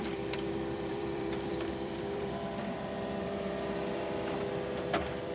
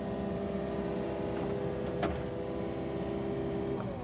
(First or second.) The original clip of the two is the second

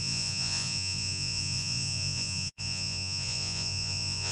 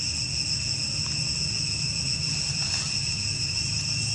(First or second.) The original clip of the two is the second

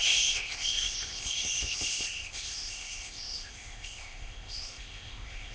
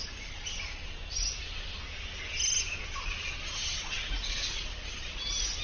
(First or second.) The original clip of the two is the second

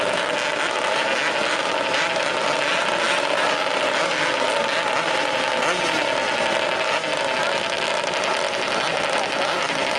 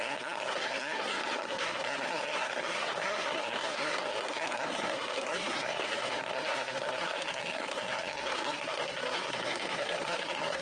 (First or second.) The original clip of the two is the first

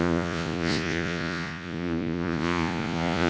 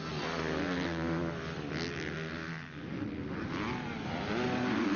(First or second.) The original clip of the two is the second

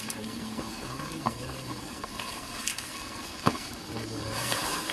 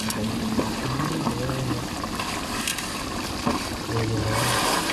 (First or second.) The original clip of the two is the second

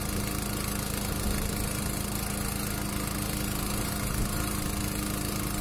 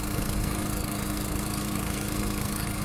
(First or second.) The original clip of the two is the first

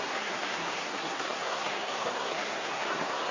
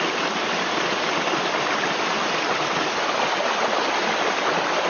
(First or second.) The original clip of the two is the second